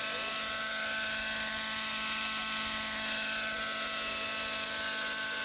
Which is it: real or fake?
real